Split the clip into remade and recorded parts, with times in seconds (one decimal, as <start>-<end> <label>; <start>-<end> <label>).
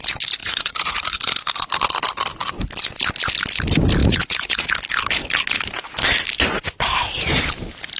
0.0-0.4 recorded; 0.4-1.2 remade; 1.2-4.0 recorded; 4.0-4.7 remade; 4.7-8.0 recorded